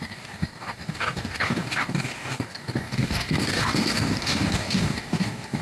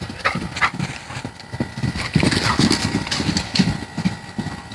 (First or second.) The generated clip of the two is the first